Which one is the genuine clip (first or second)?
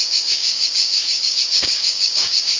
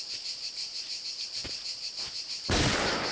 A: second